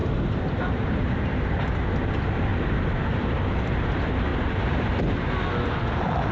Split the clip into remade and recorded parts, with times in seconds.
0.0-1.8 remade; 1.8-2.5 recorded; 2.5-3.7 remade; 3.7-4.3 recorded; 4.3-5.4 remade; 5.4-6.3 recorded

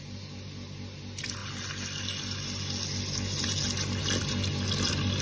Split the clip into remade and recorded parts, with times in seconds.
0.0-5.2 recorded

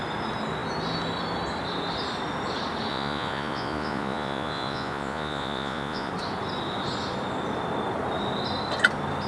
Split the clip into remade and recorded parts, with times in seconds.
0.0-2.9 recorded; 2.9-6.1 remade; 6.1-9.3 recorded

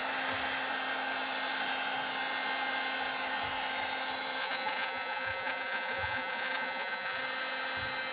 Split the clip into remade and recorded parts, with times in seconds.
0.0-4.4 recorded; 4.4-7.2 remade; 7.2-8.1 recorded

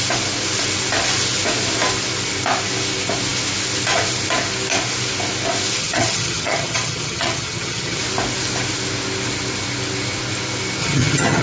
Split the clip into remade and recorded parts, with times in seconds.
0.0-5.8 recorded; 5.8-8.0 remade; 8.0-10.8 recorded; 10.8-11.4 remade